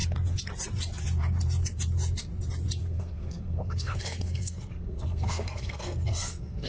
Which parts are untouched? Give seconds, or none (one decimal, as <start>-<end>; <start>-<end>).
0.0-2.8